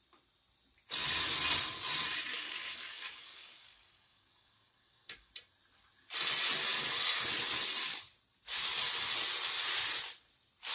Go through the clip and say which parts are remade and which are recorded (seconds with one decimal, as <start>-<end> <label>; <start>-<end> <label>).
0.0-2.3 recorded; 2.3-5.3 remade; 5.3-10.7 recorded